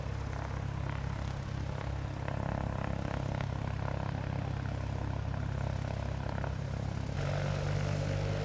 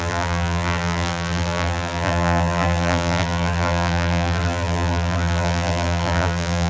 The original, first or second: first